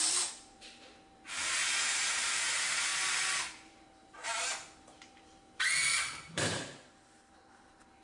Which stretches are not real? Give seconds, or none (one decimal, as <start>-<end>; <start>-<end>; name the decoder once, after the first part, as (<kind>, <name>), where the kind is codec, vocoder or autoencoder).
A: 0.0-1.6 (vocoder, BigVGAN v2); 2.1-2.9; 3.7-8.0